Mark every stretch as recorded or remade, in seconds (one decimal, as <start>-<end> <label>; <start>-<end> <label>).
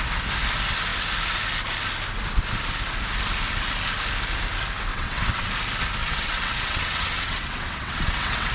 0.0-4.9 recorded; 4.9-5.5 remade; 5.5-6.0 recorded; 6.0-8.5 remade